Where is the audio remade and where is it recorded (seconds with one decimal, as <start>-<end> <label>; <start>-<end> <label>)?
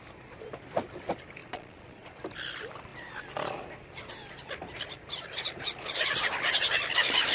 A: 0.0-1.4 recorded; 1.4-2.1 remade; 2.1-7.3 recorded